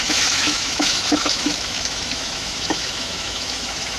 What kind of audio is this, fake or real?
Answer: fake